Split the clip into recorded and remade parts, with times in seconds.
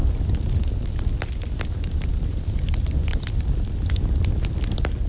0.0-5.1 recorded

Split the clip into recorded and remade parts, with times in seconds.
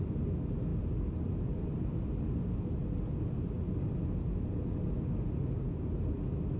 0.0-6.6 recorded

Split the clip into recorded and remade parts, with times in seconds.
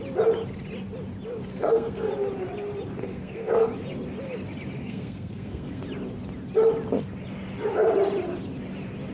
0.0-1.5 recorded; 1.5-2.1 remade; 2.1-3.0 recorded; 3.0-3.7 remade; 3.7-4.8 recorded; 4.8-5.8 remade; 5.8-9.1 recorded